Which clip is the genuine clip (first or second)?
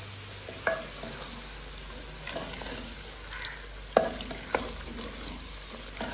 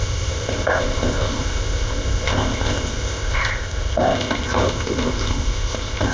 first